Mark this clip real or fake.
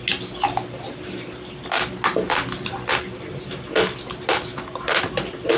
real